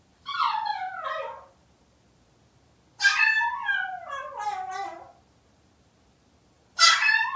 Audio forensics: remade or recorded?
recorded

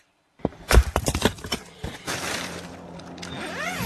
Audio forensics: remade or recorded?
remade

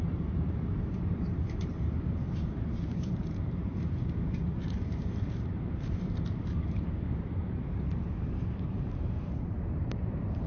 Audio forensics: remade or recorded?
remade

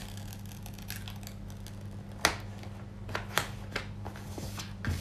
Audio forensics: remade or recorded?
recorded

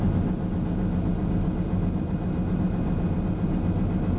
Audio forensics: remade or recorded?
recorded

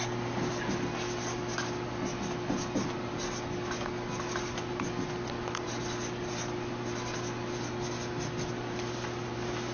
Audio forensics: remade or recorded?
recorded